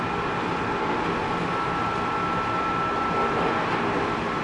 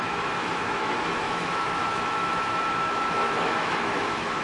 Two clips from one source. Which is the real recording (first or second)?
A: first